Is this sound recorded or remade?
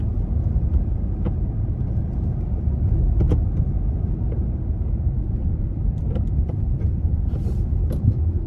recorded